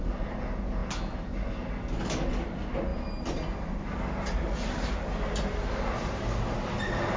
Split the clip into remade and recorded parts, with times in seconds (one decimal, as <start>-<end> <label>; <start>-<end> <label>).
0.0-7.2 recorded